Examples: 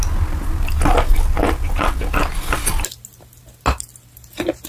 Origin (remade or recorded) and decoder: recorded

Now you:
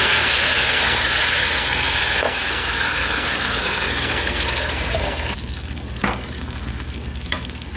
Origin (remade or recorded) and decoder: remade, codec, SNAC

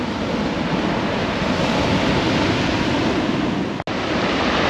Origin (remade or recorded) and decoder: recorded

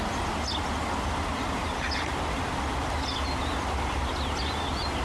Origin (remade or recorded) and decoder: recorded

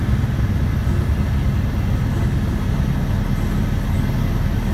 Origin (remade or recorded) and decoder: recorded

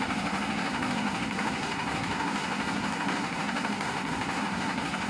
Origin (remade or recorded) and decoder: remade, codec, SNAC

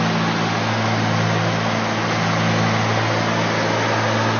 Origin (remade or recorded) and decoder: recorded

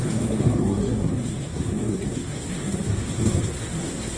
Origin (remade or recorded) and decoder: remade, codec, SNAC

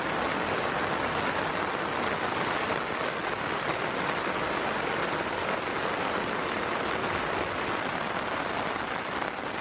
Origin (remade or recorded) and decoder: recorded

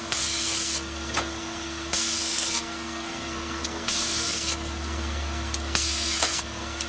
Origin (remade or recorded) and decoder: remade, codec, SNAC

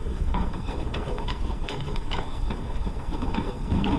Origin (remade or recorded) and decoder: remade, codec, SNAC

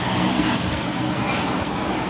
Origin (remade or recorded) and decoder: remade, codec, SNAC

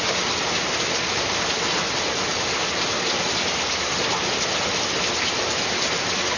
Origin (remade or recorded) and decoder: recorded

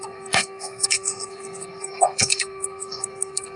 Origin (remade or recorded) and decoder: remade, codec, SNAC